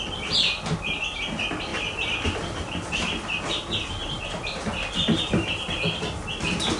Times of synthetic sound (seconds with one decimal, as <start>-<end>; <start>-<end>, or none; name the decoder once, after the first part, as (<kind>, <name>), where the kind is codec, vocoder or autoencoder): 1.7-3.4 (vocoder, BigVGAN v2); 4.0-6.0